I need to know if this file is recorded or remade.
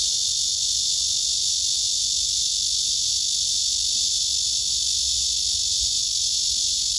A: recorded